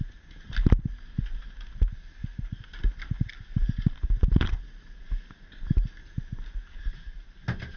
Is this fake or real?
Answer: real